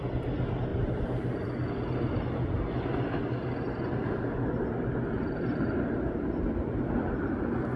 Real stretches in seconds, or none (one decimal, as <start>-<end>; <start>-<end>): 0.0-7.8